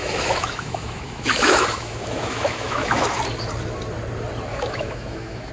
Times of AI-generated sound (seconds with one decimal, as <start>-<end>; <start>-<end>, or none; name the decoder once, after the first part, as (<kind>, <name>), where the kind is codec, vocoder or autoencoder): 0.0-3.2 (autoencoder, DAC-VAE); 4.5-5.5